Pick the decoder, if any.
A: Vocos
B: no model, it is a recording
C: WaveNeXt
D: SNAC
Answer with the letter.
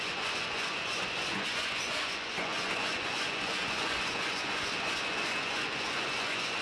A